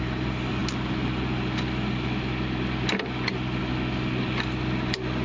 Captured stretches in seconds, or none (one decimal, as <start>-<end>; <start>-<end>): 0.0-5.2